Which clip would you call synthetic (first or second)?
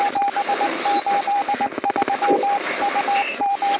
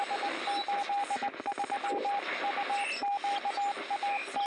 first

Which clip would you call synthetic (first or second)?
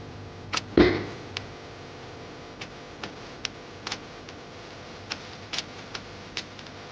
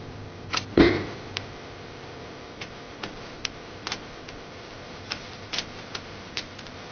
second